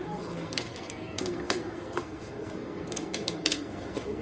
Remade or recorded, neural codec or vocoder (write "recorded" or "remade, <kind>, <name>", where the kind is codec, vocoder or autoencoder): remade, codec, SNAC